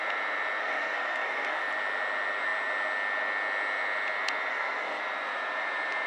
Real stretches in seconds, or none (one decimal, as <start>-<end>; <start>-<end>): 0.0-0.6; 1.6-4.5; 5.0-6.1